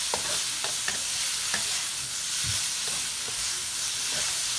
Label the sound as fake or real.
real